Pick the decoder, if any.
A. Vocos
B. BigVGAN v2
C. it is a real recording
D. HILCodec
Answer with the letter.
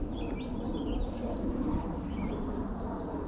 C